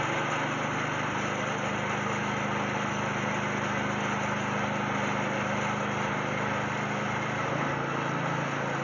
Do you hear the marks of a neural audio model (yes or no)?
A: no